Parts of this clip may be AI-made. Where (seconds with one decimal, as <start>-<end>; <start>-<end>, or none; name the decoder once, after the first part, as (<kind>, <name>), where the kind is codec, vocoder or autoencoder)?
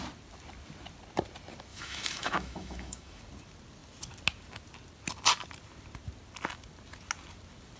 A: 1.7-3.2 (autoencoder, DAC-VAE)